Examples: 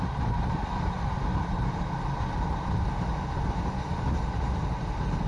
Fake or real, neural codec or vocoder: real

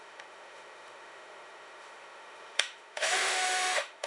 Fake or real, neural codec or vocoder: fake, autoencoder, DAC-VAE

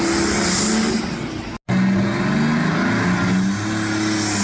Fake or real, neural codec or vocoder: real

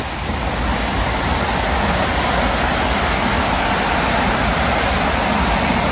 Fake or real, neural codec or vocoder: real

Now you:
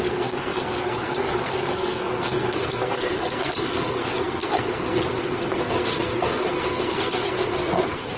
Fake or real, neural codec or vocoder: fake, codec, SNAC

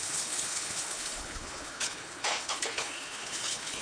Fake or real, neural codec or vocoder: fake, codec, HILCodec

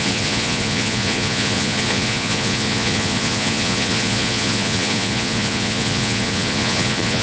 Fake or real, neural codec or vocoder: fake, vocoder, Vocos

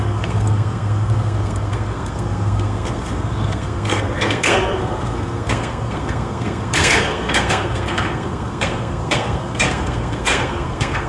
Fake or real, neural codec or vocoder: fake, codec, SNAC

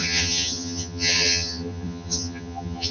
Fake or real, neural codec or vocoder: fake, vocoder, HiFi-GAN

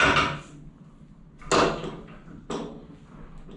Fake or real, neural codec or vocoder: real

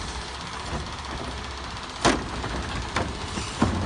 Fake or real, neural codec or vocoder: real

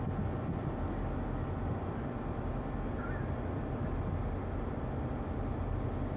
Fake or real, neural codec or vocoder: real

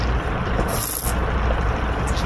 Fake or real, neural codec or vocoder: real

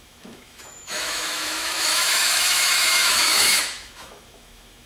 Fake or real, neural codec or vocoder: fake, autoencoder, DAC-VAE